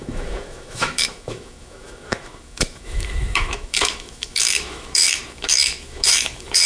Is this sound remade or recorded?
remade